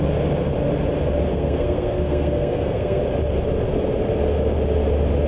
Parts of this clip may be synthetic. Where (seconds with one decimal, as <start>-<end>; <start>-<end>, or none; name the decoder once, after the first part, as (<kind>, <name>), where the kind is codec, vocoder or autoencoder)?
1.3-3.0 (codec, SNAC)